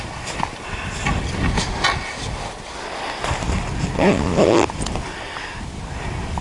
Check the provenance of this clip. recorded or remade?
recorded